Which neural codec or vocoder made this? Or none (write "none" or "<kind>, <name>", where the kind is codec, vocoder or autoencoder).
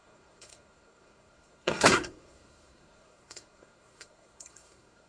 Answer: codec, SNAC